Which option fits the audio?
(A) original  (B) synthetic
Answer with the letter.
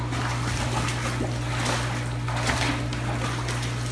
A